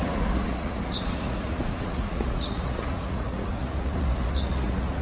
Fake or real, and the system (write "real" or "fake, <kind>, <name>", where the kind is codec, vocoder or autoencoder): fake, vocoder, Vocos